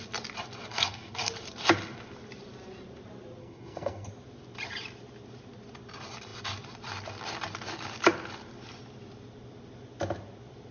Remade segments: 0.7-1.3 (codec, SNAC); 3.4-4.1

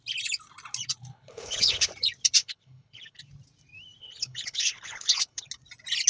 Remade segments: 1.1-1.9 (codec, HILCodec); 2.4-3.2; 4.0-5.5

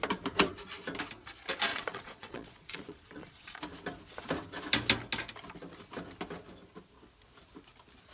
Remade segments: 1.7-3.6 (vocoder, Vocos)

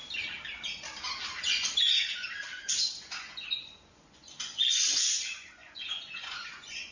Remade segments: 1.4-6.9 (vocoder, Vocos)

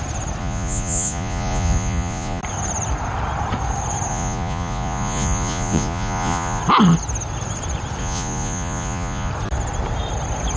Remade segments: 0.4-2.4 (vocoder, Vocos); 4.1-6.6; 8.0-9.3